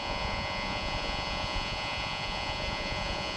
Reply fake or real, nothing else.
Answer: fake